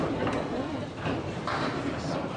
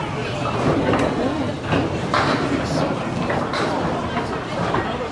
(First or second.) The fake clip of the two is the first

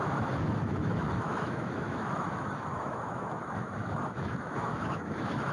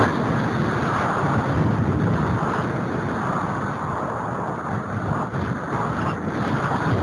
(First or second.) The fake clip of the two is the first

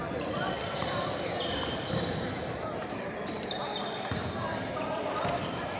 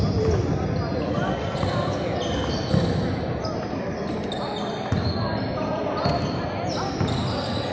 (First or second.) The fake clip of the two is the first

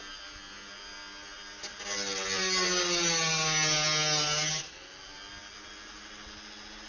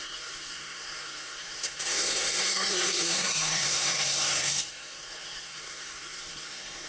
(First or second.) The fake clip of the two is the second